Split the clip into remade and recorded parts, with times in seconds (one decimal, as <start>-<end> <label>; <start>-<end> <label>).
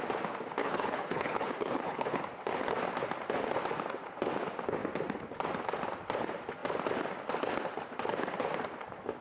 0.0-0.6 recorded; 0.6-2.2 remade; 2.2-9.2 recorded